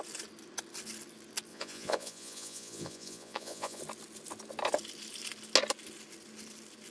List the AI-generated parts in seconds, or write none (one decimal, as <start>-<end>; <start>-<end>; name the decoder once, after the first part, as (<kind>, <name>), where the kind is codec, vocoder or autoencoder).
1.5-3.8 (vocoder, Vocos)